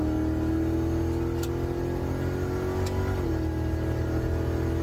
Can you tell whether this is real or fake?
real